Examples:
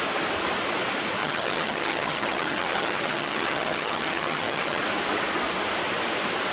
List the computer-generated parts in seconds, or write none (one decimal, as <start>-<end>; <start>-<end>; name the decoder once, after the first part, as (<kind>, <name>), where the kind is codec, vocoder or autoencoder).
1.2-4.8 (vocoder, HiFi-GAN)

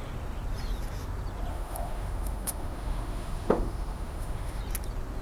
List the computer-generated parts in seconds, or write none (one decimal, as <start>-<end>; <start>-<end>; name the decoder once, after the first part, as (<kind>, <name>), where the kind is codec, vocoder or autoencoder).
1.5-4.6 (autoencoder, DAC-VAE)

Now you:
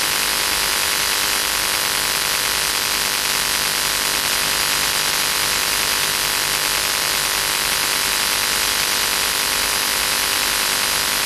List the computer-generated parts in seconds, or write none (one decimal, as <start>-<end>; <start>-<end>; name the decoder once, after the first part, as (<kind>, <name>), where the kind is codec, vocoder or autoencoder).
0.0-1.4 (vocoder, BigVGAN v2); 4.3-6.1; 7.7-11.3

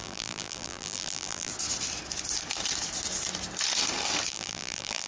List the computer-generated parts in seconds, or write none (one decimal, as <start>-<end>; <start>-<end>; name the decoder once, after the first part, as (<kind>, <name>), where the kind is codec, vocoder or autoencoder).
0.0-1.5 (vocoder, BigVGAN v2); 4.3-5.1